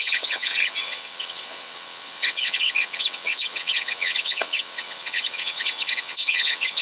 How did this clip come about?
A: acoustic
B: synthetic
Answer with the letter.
B